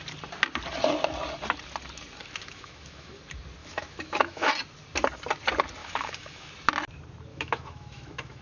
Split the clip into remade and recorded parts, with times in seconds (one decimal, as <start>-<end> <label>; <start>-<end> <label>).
0.0-2.2 recorded; 2.2-3.2 remade; 3.2-3.6 recorded; 3.6-4.5 remade; 4.5-5.8 recorded; 5.8-6.5 remade; 6.5-7.3 recorded; 7.3-8.4 remade